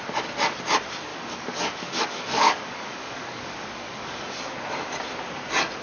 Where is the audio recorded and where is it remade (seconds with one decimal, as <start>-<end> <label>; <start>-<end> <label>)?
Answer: 0.0-1.1 recorded; 1.1-4.4 remade; 4.4-5.8 recorded